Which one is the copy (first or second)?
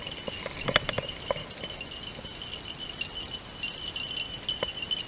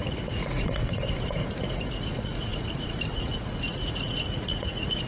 second